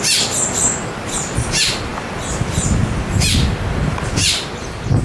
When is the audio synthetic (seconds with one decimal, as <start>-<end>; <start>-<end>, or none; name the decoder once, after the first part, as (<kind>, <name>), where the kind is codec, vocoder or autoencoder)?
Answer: 0.0-5.0 (vocoder, BigVGAN v2)